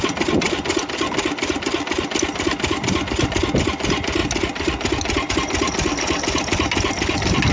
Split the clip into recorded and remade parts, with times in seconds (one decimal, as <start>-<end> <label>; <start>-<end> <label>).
0.0-7.5 recorded

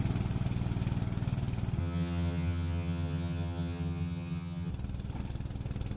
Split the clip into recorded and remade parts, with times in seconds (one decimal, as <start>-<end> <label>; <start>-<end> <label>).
0.0-1.8 recorded; 1.8-4.7 remade; 4.7-6.0 recorded

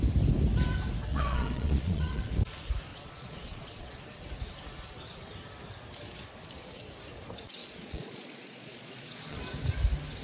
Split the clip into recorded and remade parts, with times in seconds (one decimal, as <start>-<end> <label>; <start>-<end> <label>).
0.0-1.1 recorded; 1.1-2.2 remade; 2.2-2.9 recorded; 2.9-4.0 remade; 4.0-7.6 recorded; 7.6-9.4 remade; 9.4-10.2 recorded

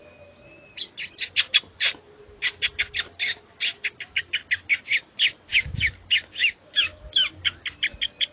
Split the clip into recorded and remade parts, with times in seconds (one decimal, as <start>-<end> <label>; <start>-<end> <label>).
0.0-6.4 recorded; 6.4-7.4 remade; 7.4-8.3 recorded

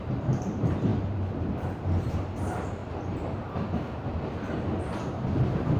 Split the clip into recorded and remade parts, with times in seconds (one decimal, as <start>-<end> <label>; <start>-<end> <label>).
0.0-2.8 remade; 2.8-5.8 recorded

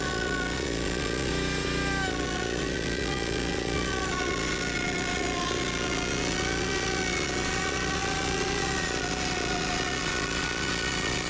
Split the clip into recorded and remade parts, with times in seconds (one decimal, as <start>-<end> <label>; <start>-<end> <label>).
0.0-1.3 remade; 1.3-2.1 recorded; 2.1-11.3 remade

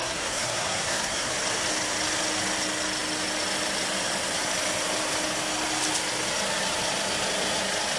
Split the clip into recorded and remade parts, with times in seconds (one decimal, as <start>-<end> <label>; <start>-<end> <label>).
0.0-1.3 remade; 1.3-8.0 recorded